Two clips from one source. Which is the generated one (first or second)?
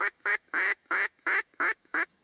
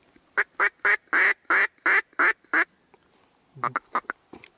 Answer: first